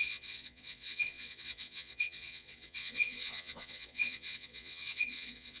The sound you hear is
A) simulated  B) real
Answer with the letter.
A